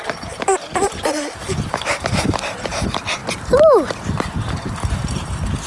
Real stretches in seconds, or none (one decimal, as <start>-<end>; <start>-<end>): 3.2-4.0